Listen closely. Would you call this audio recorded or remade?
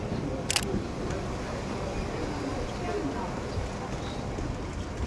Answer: recorded